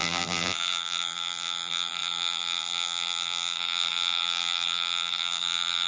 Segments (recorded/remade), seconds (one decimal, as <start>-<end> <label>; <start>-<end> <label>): 0.0-5.9 remade